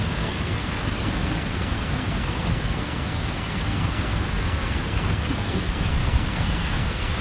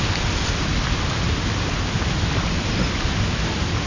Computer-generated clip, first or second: first